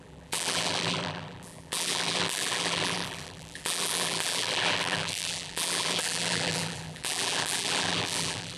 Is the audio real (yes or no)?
no